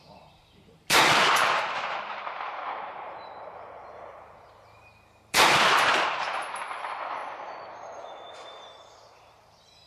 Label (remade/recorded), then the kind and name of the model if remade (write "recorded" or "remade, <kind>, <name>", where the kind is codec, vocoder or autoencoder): remade, vocoder, BigVGAN v2